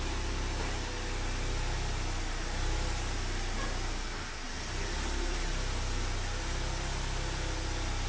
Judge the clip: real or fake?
real